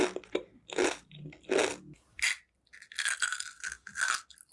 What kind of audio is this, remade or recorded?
recorded